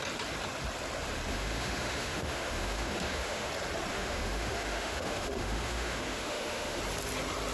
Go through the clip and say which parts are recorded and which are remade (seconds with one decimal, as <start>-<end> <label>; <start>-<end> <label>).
0.0-1.3 recorded; 1.3-3.5 remade; 3.5-3.9 recorded; 3.9-6.8 remade; 6.8-7.5 recorded